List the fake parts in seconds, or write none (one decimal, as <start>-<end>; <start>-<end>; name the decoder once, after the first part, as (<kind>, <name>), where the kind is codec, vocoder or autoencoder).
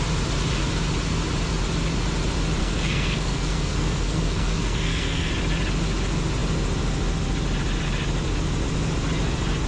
2.6-5.3 (codec, SNAC)